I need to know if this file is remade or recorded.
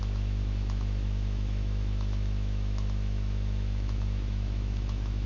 remade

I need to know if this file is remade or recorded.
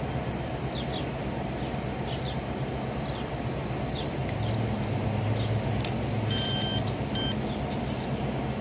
recorded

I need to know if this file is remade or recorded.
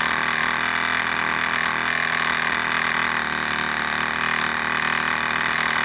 recorded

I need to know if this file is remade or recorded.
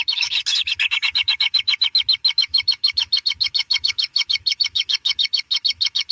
remade